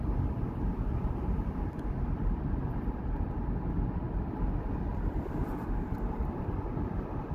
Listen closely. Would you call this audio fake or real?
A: real